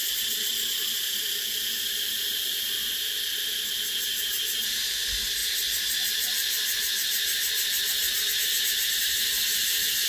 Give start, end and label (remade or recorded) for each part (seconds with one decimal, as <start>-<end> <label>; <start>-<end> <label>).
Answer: 0.0-10.1 recorded